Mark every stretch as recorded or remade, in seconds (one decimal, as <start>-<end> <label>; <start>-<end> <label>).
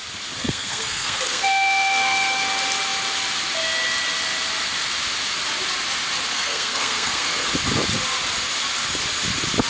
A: 0.0-0.4 recorded; 0.4-2.5 remade; 2.5-6.3 recorded; 6.3-7.5 remade; 7.5-9.7 recorded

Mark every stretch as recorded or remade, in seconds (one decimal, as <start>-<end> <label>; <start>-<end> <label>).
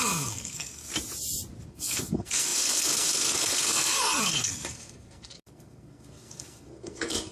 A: 0.0-0.9 remade; 0.9-1.7 recorded; 1.7-7.3 remade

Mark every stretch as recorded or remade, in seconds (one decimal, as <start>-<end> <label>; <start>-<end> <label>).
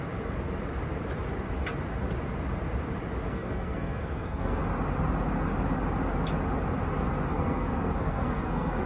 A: 0.0-3.3 recorded; 3.3-4.6 remade; 4.6-7.3 recorded; 7.3-8.9 remade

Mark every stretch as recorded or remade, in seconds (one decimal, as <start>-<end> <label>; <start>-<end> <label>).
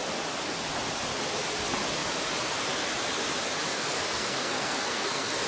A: 0.0-3.7 recorded; 3.7-5.5 remade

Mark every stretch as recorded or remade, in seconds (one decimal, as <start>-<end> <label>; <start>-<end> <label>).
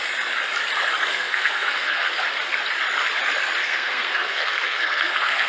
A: 0.0-1.1 recorded; 1.1-2.2 remade; 2.2-3.6 recorded; 3.6-5.5 remade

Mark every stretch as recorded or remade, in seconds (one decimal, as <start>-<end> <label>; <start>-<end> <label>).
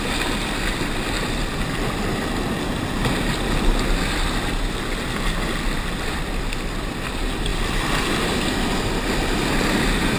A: 0.0-10.2 recorded